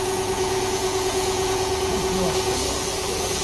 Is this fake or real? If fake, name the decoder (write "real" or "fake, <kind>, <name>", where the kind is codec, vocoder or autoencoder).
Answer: fake, vocoder, Vocos